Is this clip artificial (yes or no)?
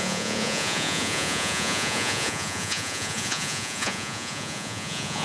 yes